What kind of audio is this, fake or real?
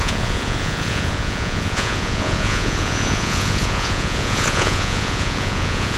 fake